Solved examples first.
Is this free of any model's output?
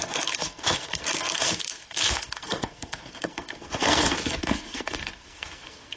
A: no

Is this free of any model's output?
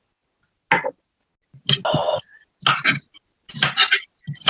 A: yes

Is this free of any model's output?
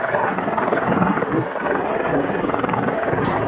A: no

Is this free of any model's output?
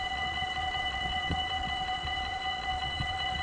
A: no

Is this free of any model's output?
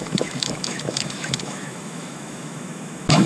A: no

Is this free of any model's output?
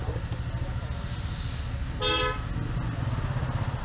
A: yes